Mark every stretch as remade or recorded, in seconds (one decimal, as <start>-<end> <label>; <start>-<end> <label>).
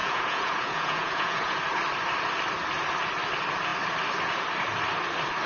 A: 0.0-1.6 remade; 1.6-5.5 recorded